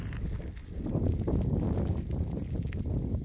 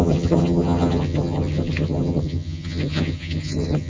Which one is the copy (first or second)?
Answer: second